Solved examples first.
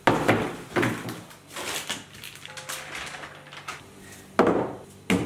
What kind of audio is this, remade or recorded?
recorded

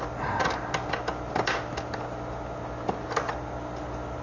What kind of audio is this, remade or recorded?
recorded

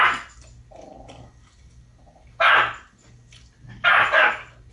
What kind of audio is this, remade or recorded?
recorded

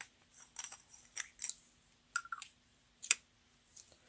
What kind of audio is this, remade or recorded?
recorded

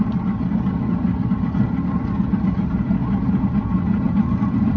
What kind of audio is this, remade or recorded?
recorded